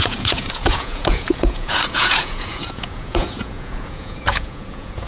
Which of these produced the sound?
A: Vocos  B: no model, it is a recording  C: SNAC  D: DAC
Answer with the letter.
A